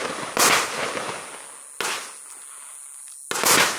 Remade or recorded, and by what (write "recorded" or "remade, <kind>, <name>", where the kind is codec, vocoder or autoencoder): recorded